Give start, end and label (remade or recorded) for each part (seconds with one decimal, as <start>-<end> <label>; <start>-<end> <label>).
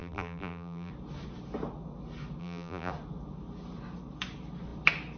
0.0-0.9 remade; 0.9-2.4 recorded; 2.4-2.9 remade; 2.9-5.2 recorded